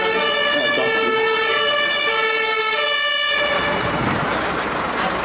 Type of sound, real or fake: real